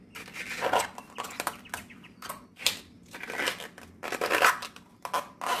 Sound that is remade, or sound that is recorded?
recorded